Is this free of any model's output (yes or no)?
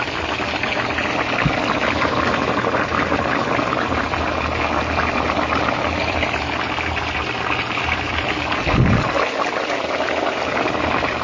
yes